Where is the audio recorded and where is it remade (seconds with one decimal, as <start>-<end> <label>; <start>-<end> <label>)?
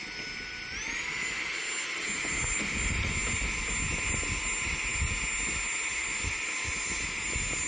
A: 0.0-7.7 recorded